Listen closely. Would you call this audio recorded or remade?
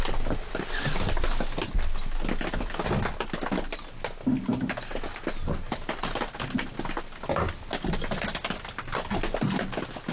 recorded